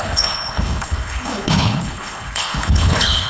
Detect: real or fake fake